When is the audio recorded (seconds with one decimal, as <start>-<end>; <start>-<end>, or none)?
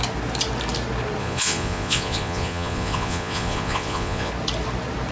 0.0-1.2; 4.3-5.1